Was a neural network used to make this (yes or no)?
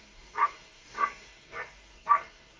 yes